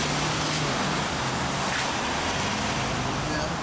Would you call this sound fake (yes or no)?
no